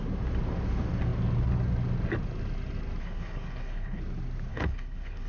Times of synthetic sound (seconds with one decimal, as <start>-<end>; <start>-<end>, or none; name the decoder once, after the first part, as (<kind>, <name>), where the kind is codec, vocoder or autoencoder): 3.0-4.0 (codec, HILCodec); 4.5-5.3